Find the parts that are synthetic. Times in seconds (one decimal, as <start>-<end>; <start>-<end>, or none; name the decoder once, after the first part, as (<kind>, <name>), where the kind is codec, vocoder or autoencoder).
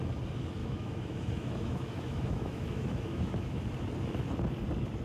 0.6-3.6 (autoencoder, DAC-VAE)